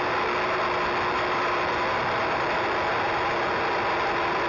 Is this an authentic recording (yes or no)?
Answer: yes